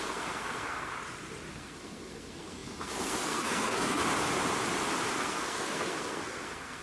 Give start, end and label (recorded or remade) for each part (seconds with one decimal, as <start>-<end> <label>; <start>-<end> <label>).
0.0-0.9 remade; 0.9-1.5 recorded; 1.5-4.0 remade; 4.0-5.1 recorded; 5.1-6.8 remade